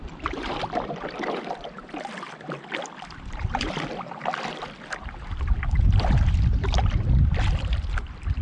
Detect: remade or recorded remade